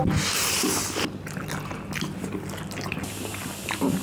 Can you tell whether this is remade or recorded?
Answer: recorded